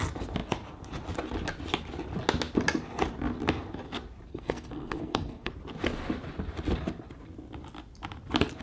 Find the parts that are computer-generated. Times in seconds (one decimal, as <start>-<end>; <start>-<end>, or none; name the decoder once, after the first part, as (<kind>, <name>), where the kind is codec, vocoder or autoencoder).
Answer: 4.3-5.5 (codec, SNAC)